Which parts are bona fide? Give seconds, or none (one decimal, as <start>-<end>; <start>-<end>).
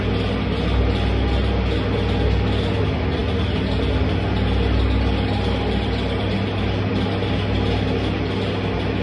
0.0-9.0